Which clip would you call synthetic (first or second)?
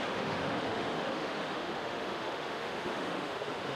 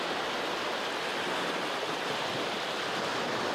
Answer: first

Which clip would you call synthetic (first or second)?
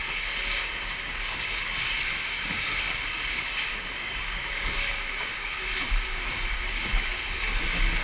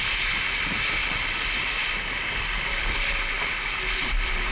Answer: first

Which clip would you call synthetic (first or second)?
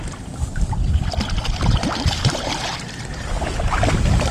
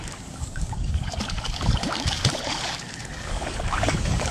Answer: second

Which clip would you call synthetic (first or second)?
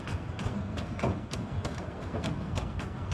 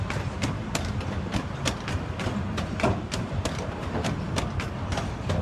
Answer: first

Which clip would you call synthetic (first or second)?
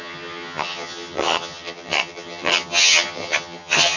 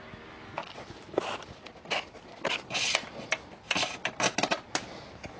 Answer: first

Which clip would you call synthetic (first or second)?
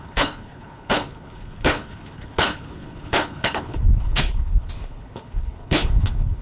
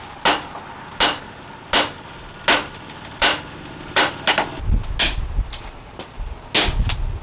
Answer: first